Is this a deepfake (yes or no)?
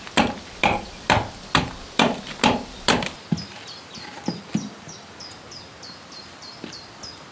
yes